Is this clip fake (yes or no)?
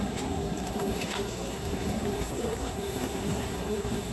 yes